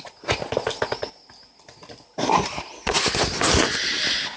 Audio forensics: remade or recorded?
recorded